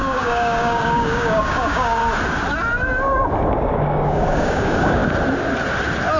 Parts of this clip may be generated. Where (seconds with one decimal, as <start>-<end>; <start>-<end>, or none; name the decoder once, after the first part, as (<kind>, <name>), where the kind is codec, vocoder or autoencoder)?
0.0-2.0 (codec, DAC); 3.5-5.0